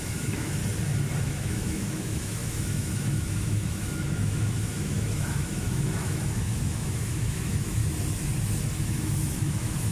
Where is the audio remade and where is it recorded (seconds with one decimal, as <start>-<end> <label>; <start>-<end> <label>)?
0.0-0.6 remade; 0.6-1.2 recorded; 1.2-7.8 remade; 7.8-8.8 recorded; 8.8-9.9 remade

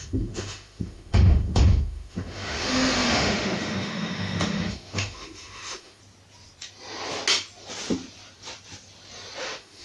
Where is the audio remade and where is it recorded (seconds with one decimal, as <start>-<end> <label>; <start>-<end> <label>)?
0.0-6.0 remade; 6.0-9.4 recorded; 9.4-9.8 remade

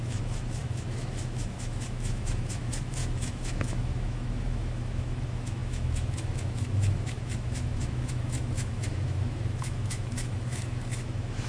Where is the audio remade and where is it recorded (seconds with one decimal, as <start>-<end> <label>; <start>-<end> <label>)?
0.0-11.5 remade

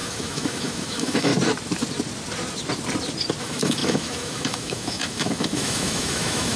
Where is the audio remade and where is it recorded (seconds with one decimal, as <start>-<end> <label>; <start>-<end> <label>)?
0.0-1.3 remade; 1.3-3.4 recorded; 3.4-6.6 remade

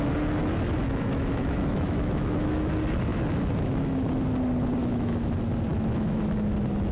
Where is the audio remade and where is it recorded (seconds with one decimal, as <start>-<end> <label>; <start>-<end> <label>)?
0.0-0.8 recorded; 0.8-2.7 remade; 2.7-3.1 recorded; 3.1-4.2 remade; 4.2-4.8 recorded; 4.8-5.3 remade; 5.3-5.7 recorded; 5.7-6.2 remade; 6.2-6.9 recorded